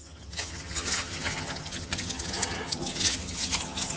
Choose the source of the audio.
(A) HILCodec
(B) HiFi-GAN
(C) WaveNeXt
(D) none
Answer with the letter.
B